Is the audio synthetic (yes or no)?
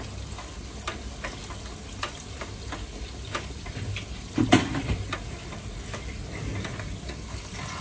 no